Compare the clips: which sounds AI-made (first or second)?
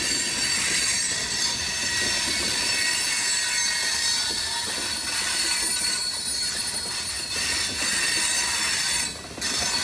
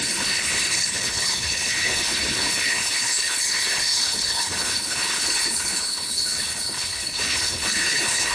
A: second